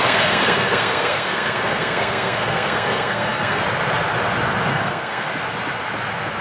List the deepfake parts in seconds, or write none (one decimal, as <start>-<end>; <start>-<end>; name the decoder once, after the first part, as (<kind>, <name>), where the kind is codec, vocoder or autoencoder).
0.0-3.6 (codec, SNAC); 4.7-5.3